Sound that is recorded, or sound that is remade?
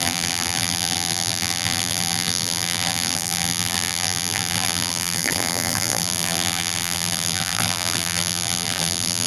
remade